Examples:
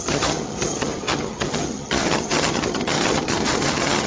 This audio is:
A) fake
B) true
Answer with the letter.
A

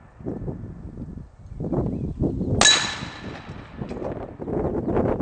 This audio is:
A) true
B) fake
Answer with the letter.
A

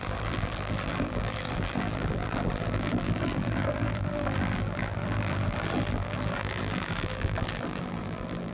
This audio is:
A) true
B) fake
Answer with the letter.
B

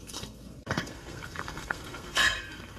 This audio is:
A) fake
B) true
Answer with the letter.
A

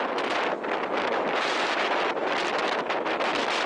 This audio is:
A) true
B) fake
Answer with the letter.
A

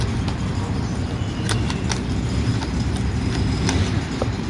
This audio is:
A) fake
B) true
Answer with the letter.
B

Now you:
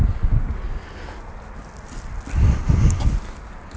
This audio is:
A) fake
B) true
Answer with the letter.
B